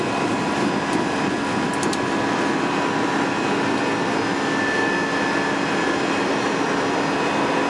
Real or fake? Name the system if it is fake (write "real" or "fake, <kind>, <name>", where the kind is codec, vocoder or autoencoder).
real